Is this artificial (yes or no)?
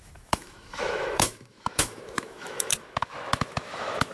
yes